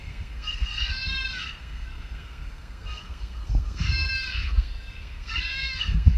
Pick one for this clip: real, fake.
fake